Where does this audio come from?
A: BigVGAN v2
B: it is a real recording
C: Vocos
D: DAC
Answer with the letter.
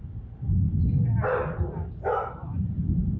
B